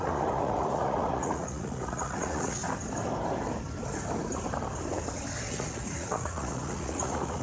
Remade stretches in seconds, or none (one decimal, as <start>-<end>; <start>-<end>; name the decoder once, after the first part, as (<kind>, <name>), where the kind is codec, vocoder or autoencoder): 0.0-2.6 (vocoder, Vocos); 5.5-7.4